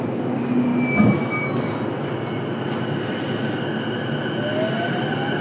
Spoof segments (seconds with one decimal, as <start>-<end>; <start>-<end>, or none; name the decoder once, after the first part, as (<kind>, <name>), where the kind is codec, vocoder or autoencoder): none